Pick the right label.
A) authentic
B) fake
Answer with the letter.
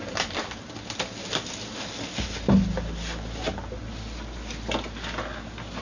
A